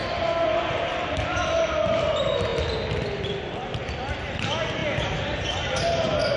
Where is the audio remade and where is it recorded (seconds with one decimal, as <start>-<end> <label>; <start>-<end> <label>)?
0.0-6.4 recorded